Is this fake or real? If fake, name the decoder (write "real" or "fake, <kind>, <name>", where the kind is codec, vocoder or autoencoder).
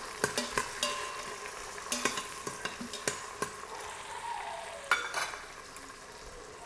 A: real